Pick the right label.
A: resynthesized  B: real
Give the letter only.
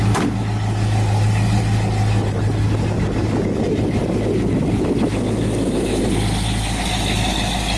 B